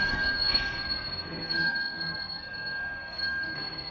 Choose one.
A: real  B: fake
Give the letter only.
B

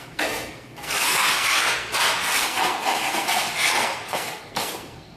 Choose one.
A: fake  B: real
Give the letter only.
A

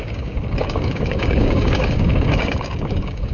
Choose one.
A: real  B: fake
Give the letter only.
B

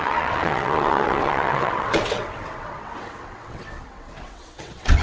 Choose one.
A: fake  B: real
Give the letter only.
A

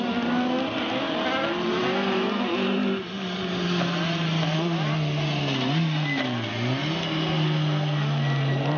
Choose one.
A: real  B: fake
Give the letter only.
A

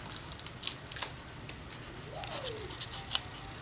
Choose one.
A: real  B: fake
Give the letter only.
A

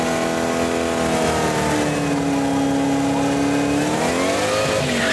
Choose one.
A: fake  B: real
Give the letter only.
B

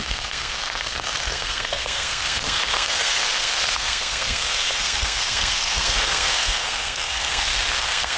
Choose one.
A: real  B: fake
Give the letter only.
B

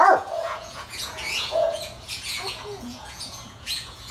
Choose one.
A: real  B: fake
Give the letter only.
B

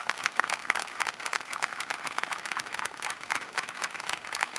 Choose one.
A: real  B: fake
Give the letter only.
B